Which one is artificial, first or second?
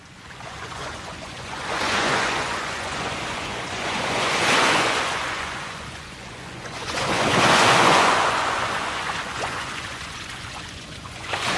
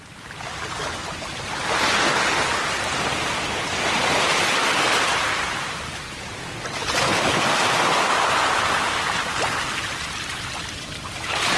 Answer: first